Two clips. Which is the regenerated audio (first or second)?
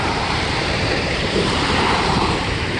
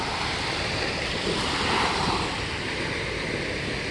first